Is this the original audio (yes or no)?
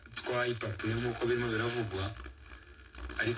yes